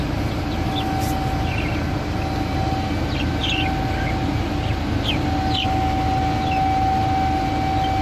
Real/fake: real